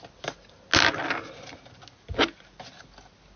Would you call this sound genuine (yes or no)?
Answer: yes